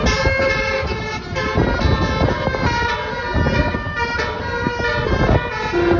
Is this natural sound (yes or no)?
yes